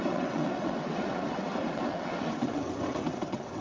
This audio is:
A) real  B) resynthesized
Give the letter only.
B